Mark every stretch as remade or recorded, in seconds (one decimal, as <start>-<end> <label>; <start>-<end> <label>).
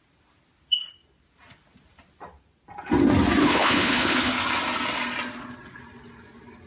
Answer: 0.0-3.4 recorded; 3.4-4.3 remade; 4.3-6.7 recorded